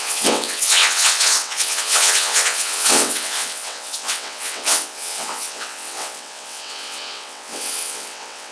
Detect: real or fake fake